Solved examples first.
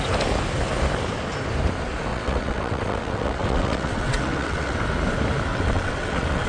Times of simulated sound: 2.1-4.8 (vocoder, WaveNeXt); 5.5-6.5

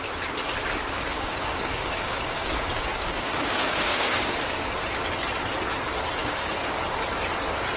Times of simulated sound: 0.8-4.7 (codec, DAC); 6.2-6.8

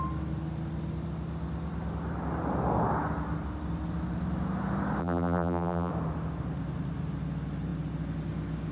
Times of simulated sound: 5.0-5.9 (vocoder, BigVGAN v2)

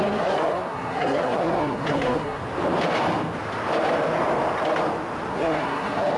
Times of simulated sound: 0.0-2.4 (codec, SNAC); 5.3-6.2

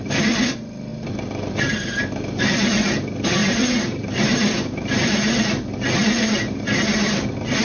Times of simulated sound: 3.4-5.3 (vocoder, BigVGAN v2); 6.0-6.7

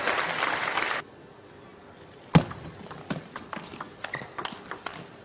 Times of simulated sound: none

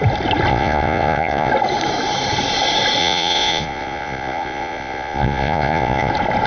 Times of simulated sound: 0.5-1.5 (vocoder, Vocos); 3.0-6.1

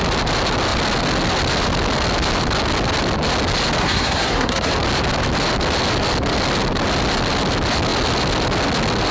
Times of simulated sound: 3.8-4.7 (codec, SNAC)